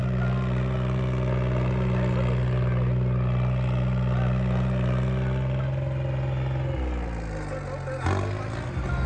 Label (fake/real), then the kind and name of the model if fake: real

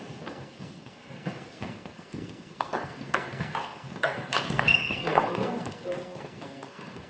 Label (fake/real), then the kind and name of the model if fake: fake, codec, SNAC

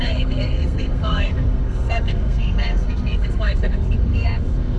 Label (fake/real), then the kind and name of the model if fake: fake, codec, SNAC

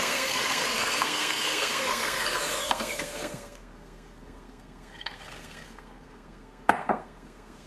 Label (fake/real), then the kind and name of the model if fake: fake, codec, SNAC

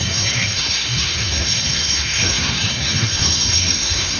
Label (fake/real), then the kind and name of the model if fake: fake, codec, SNAC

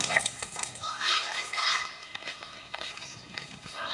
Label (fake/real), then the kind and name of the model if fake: fake, codec, SNAC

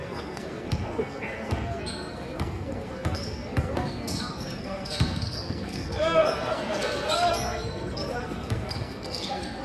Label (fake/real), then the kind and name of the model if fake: fake, codec, SNAC